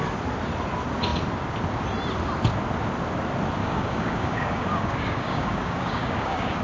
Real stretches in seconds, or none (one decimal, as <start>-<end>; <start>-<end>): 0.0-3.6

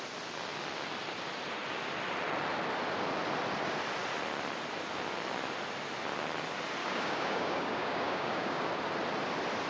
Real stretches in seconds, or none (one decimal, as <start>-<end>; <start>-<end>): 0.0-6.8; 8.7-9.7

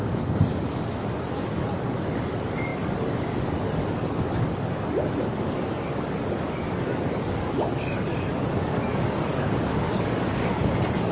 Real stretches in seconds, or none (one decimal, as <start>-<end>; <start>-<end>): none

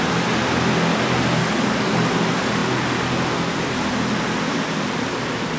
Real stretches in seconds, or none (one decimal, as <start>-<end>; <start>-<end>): 0.0-1.4; 2.1-5.6

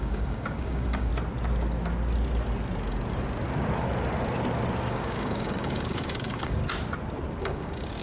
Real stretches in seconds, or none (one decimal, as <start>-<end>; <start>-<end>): 1.1-4.9; 6.6-7.4

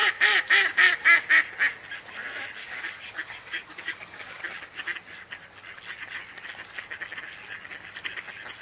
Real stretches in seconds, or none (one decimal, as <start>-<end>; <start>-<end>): 0.0-2.6; 4.4-8.6